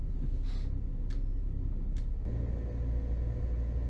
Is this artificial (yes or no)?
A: no